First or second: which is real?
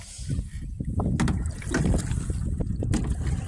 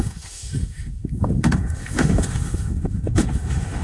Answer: first